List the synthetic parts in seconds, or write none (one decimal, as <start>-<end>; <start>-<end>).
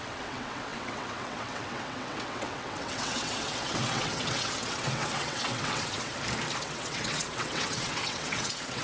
0.0-6.1; 6.6-8.8